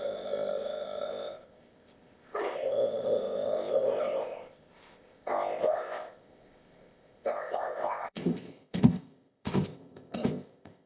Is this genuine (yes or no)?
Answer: no